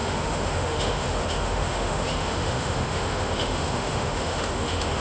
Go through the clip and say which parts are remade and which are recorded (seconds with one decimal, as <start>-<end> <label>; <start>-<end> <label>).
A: 0.0-5.0 remade